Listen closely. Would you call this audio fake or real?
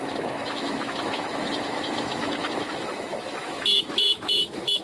fake